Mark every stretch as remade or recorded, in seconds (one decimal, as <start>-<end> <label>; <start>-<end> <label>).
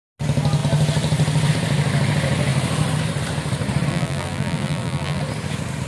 0.0-3.9 recorded; 3.9-5.2 remade; 5.2-5.9 recorded